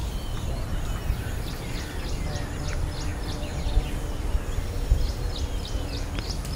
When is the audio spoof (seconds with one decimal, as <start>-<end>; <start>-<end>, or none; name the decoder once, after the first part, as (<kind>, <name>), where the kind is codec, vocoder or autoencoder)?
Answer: 0.0-2.2 (vocoder, BigVGAN v2); 3.1-3.9